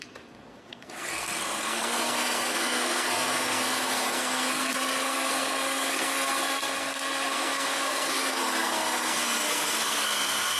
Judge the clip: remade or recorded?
remade